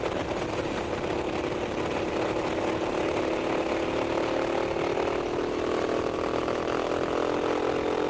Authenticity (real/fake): real